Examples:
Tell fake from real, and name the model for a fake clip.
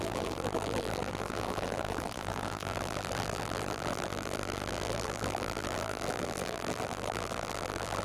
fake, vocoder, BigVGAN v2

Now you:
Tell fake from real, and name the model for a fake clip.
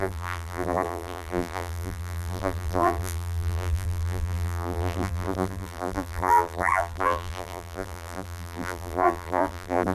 fake, vocoder, BigVGAN v2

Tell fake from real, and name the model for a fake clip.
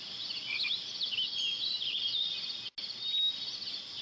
real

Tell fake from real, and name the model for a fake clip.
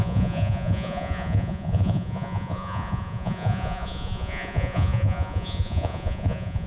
fake, vocoder, Vocos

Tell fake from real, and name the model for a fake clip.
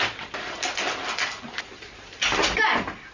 real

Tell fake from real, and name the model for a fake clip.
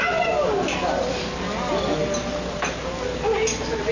real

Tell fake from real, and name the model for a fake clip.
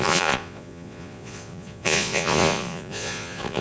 fake, vocoder, Vocos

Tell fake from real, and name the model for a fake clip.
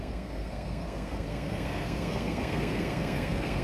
fake, codec, SNAC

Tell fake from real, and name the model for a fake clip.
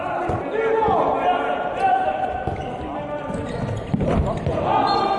real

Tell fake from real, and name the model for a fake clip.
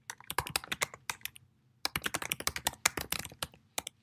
real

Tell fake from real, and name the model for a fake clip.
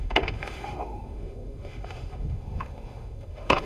fake, autoencoder, DAC-VAE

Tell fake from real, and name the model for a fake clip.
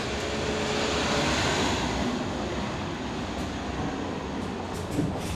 real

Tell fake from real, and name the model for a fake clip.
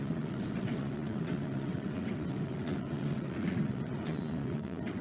fake, vocoder, WaveNeXt